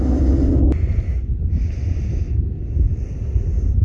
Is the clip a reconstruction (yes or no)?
no